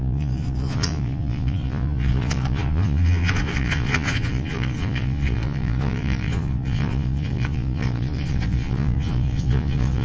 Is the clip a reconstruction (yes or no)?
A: yes